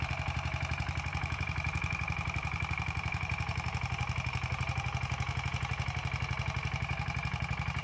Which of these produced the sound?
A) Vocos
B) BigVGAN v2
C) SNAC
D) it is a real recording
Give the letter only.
B